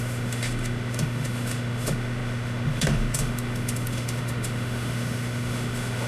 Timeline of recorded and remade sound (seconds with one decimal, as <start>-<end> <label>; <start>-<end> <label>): 0.0-6.1 remade